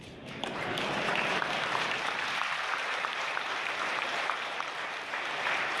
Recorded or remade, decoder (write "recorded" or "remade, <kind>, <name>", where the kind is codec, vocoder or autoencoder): remade, vocoder, BigVGAN v2